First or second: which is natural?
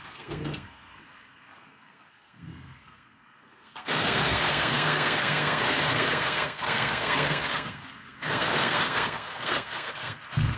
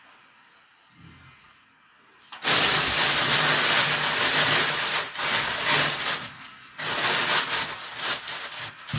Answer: second